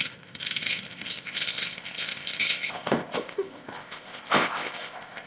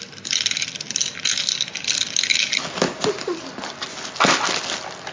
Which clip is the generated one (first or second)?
first